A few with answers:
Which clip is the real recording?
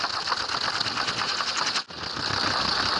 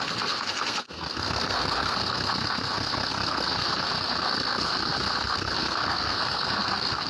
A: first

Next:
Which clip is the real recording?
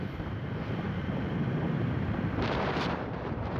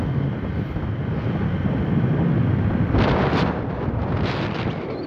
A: second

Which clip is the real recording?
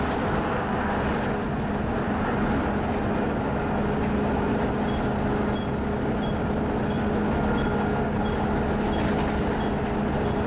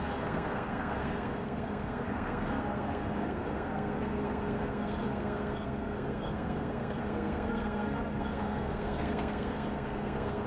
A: first